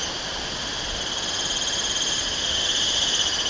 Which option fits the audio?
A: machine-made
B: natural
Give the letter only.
B